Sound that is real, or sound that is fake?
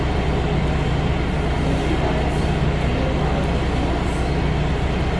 real